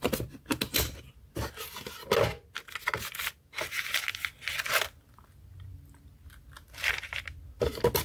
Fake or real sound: real